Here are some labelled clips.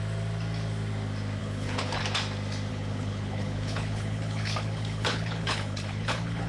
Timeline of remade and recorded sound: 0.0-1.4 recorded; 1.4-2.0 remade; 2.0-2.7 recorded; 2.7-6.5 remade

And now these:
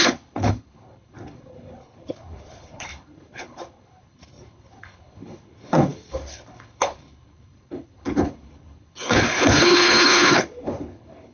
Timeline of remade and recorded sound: 0.0-11.3 remade

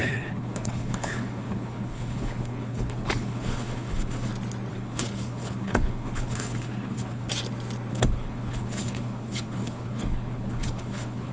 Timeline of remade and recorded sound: 0.0-4.3 remade; 4.3-4.7 recorded; 4.7-7.3 remade; 7.3-7.9 recorded; 7.9-11.3 remade

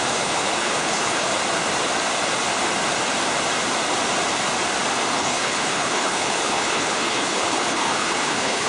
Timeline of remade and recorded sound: 0.0-1.3 remade; 1.3-5.1 recorded; 5.1-8.7 remade